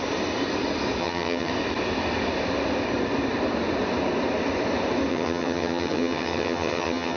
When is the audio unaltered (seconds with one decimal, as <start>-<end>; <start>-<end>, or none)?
0.0-1.0; 1.5-5.1